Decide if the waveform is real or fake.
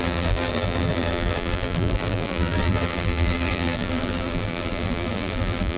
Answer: fake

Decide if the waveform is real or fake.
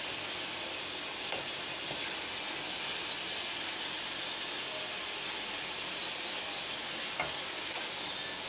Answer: real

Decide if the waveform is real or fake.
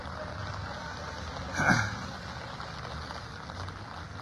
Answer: real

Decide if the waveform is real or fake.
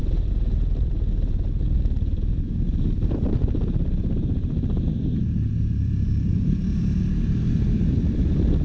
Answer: fake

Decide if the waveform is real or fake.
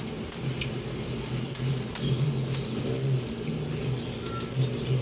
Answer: real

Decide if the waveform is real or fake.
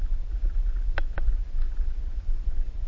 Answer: real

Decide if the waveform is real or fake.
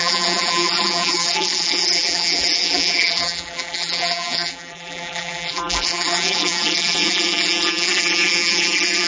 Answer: fake